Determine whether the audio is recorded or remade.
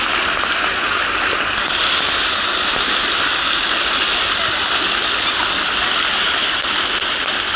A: recorded